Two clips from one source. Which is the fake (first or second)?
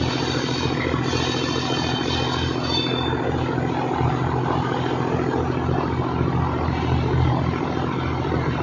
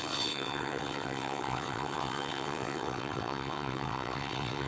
second